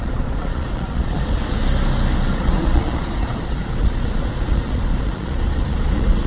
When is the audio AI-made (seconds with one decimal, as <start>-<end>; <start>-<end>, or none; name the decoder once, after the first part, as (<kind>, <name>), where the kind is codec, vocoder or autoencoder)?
0.0-1.6 (vocoder, Vocos); 2.4-6.3